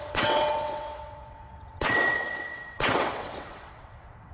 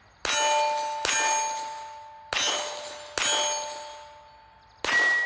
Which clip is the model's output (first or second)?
first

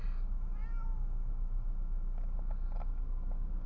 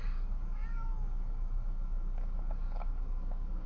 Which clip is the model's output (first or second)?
second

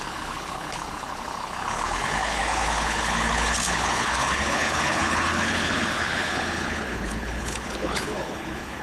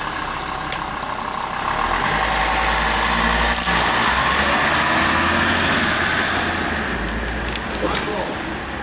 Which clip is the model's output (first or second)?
first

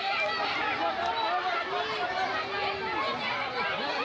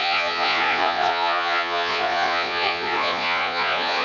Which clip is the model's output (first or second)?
second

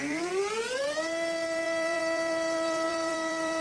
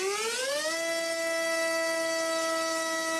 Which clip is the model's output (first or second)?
first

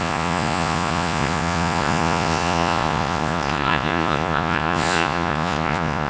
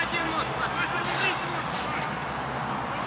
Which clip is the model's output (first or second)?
first